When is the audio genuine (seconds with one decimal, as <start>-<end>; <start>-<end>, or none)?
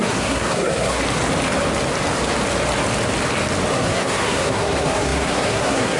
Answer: 1.0-3.7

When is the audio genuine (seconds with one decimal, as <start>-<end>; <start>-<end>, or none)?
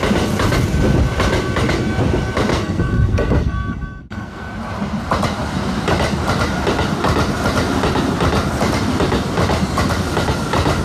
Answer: 0.0-2.5; 4.5-10.8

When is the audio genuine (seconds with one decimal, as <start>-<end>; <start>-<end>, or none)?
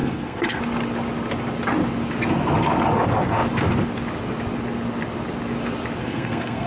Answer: 0.6-6.0